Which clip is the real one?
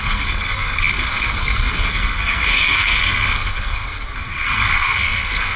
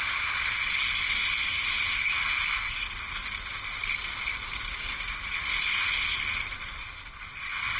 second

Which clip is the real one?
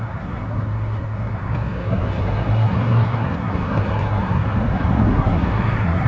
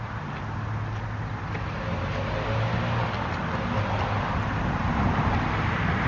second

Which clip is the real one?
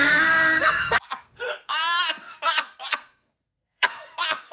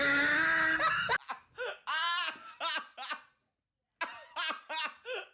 second